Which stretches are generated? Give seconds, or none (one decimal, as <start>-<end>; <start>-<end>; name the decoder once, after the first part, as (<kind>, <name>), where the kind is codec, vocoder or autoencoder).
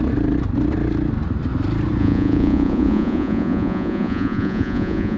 2.0-5.2 (vocoder, Vocos)